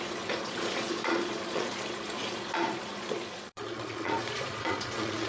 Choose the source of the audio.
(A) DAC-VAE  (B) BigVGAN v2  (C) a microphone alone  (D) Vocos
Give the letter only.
D